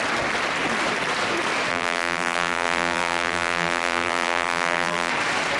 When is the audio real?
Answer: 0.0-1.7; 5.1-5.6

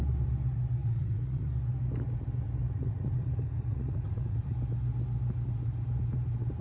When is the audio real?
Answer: 0.0-0.8; 1.5-2.6; 4.5-6.6